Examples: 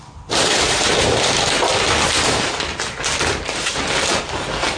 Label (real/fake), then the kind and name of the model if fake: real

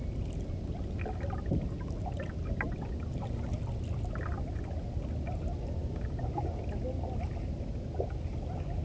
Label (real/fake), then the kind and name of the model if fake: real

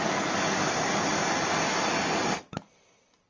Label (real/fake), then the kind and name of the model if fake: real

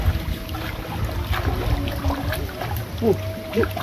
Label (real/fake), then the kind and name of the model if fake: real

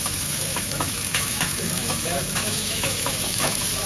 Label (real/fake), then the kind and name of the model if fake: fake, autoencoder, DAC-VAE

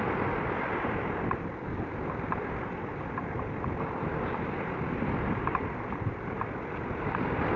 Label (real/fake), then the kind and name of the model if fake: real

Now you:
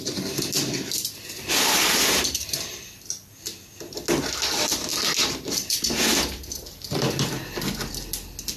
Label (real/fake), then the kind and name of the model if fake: real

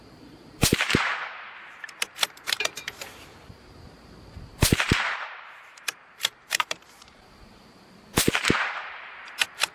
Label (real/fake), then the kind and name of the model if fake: fake, vocoder, BigVGAN v2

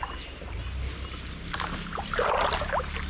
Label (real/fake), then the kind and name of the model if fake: real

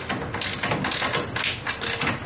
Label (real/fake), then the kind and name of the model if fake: real